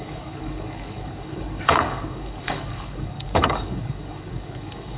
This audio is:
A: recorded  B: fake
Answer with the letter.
B